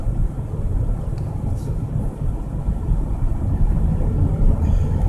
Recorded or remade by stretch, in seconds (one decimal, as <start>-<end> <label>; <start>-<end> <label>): 0.0-5.1 recorded